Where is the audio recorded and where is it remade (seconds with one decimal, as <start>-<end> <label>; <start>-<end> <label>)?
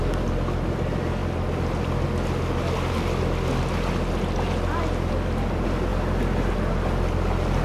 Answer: 0.0-7.6 recorded